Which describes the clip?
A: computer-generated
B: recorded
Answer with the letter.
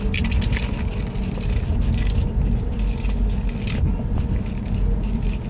B